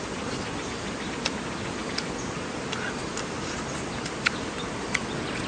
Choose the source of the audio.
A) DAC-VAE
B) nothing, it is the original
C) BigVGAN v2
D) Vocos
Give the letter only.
C